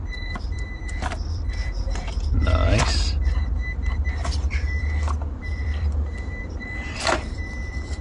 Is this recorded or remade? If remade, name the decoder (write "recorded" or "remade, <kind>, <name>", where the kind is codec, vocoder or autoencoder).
remade, vocoder, BigVGAN v2